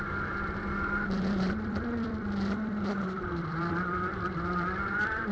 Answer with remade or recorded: remade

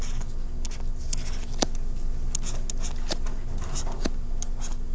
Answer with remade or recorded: recorded